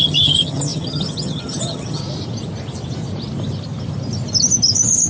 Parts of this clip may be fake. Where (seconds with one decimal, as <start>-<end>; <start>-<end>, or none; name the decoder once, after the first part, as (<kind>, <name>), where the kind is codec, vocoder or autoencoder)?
0.0-2.0 (vocoder, HiFi-GAN)